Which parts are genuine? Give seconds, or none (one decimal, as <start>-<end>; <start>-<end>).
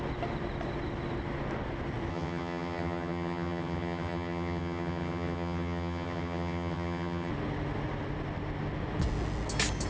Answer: 0.0-2.1; 7.3-9.9